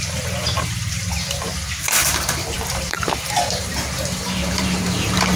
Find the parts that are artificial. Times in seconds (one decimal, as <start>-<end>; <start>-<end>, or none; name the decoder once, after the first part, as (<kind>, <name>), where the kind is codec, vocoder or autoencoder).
2.0-5.4 (vocoder, BigVGAN v2)